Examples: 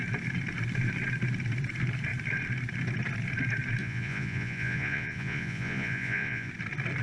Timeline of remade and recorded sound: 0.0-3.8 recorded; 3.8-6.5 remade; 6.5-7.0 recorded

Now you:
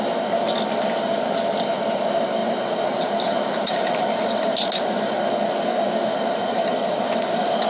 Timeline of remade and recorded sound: 0.0-2.4 recorded; 2.4-5.3 remade; 5.3-6.0 recorded; 6.0-6.7 remade; 6.7-7.7 recorded

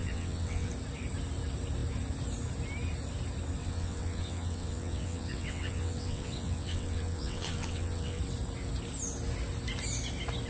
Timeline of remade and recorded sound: 0.0-0.7 remade; 0.7-3.6 recorded; 3.6-8.2 remade; 8.2-10.5 recorded

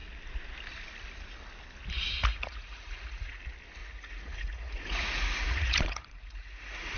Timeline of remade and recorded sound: 0.0-2.3 recorded; 2.3-3.4 remade; 3.4-3.8 recorded; 3.8-7.0 remade

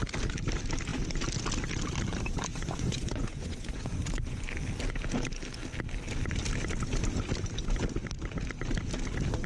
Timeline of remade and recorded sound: 0.0-2.5 recorded; 2.5-4.4 remade; 4.4-9.5 recorded

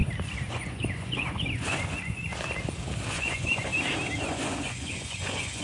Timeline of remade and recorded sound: 0.0-0.5 recorded; 0.5-2.2 remade; 2.2-3.1 recorded; 3.1-3.7 remade; 3.7-4.2 recorded; 4.2-5.6 remade

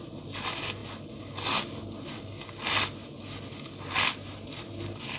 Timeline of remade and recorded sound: 0.0-5.2 recorded